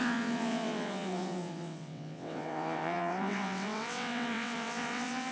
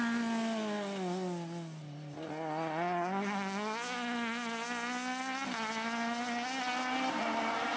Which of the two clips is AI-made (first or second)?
first